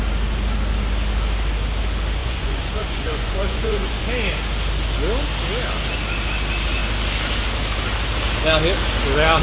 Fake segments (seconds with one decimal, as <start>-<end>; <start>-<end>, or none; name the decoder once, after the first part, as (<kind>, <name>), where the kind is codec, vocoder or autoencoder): 2.2-4.0 (vocoder, Vocos)